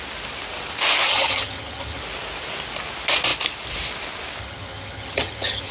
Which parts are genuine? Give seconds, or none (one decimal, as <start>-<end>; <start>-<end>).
0.0-1.1; 2.0-4.4